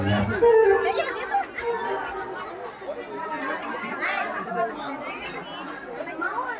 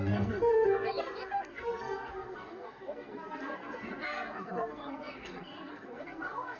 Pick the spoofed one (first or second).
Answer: second